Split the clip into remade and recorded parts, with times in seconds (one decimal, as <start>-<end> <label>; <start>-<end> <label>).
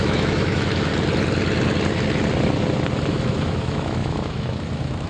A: 0.0-0.9 remade; 0.9-3.1 recorded; 3.1-5.1 remade